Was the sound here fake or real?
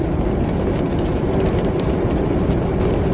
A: real